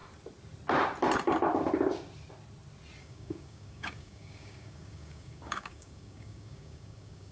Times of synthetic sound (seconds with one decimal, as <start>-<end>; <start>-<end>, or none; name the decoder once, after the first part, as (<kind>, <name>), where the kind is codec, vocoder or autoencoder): 3.0-7.3 (codec, DAC)